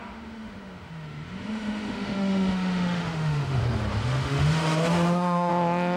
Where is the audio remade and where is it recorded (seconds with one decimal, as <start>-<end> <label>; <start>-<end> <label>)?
0.0-3.6 remade; 3.6-4.0 recorded; 4.0-5.5 remade; 5.5-6.0 recorded